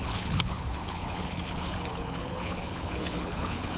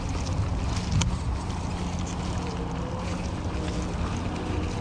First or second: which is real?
second